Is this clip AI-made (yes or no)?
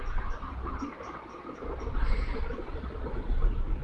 yes